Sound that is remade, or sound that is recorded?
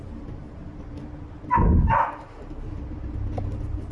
recorded